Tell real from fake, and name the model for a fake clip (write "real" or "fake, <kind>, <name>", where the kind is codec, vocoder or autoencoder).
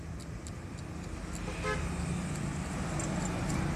real